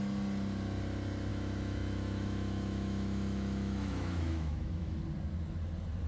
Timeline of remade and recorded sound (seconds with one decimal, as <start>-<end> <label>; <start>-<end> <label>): 0.0-1.3 recorded; 1.3-5.0 remade; 5.0-6.1 recorded